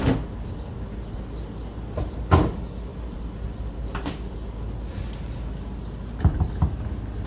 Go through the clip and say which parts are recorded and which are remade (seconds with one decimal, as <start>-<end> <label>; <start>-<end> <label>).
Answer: 0.0-7.3 recorded